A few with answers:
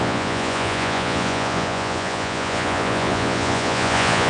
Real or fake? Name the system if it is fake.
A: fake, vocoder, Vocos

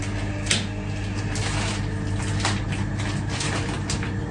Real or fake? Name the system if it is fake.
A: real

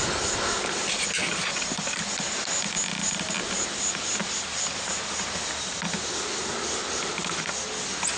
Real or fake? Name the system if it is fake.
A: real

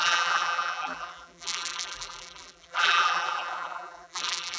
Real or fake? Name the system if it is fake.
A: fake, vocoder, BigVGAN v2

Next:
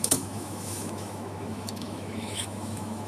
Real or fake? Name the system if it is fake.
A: fake, autoencoder, DAC-VAE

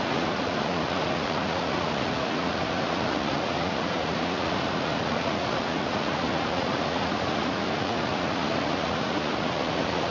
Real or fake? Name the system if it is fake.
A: fake, vocoder, Vocos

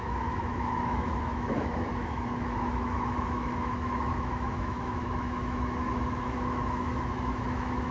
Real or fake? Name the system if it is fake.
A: fake, autoencoder, DAC-VAE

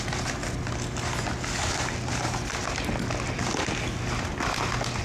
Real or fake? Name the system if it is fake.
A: real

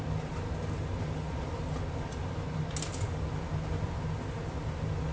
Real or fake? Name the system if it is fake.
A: real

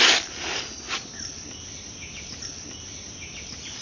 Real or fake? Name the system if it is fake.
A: real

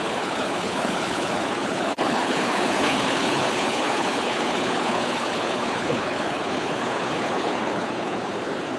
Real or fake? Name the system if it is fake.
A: fake, codec, HILCodec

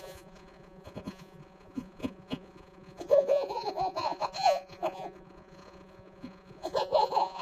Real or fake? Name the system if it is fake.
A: fake, vocoder, Vocos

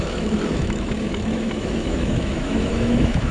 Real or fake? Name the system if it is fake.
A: fake, autoencoder, DAC-VAE